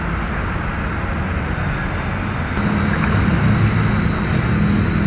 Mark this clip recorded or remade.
recorded